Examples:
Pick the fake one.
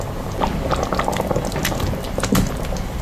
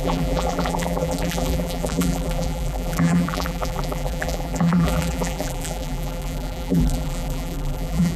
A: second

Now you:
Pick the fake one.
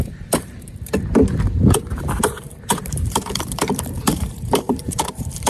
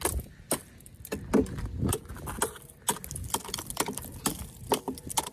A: first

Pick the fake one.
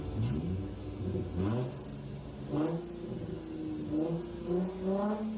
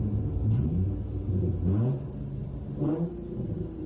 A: second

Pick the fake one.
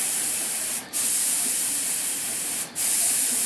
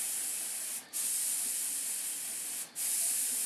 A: first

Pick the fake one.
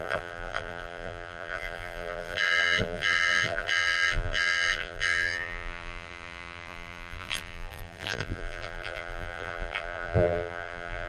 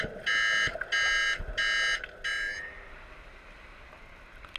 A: first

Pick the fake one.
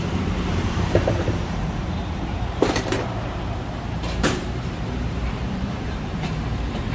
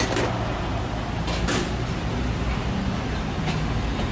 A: first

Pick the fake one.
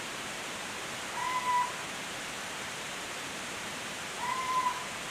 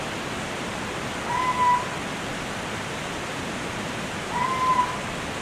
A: first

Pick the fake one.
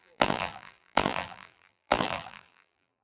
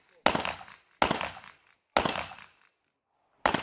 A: first